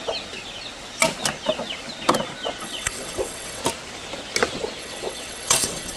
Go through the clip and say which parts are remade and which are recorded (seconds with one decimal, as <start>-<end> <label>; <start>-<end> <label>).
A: 0.0-2.6 recorded; 2.6-3.6 remade; 3.6-4.8 recorded; 4.8-6.0 remade